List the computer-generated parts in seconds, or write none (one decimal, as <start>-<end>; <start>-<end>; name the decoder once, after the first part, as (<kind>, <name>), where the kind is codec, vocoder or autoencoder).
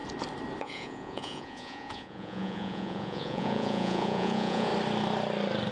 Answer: 0.6-4.7 (vocoder, Vocos)